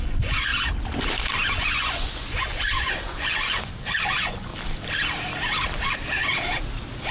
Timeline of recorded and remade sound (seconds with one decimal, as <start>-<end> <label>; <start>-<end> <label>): 0.0-0.5 remade; 0.5-1.6 recorded; 1.6-4.5 remade; 4.5-7.1 recorded